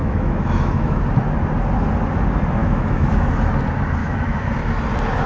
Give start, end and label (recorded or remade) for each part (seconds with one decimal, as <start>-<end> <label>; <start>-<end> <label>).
0.0-1.0 remade; 1.0-2.6 recorded; 2.6-3.3 remade; 3.3-4.0 recorded; 4.0-4.5 remade; 4.5-5.3 recorded